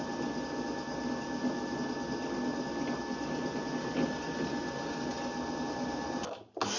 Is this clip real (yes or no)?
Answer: yes